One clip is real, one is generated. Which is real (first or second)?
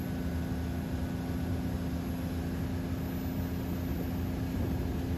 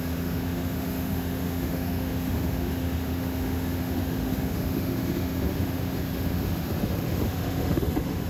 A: first